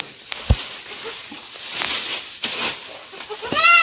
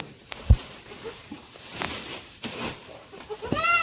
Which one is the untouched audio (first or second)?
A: first